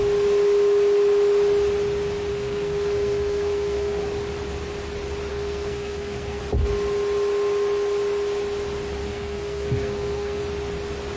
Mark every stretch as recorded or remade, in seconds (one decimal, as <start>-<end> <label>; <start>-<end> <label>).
0.0-2.3 recorded; 2.3-4.0 remade; 4.0-5.3 recorded; 5.3-6.4 remade; 6.4-9.0 recorded; 9.0-10.4 remade; 10.4-11.2 recorded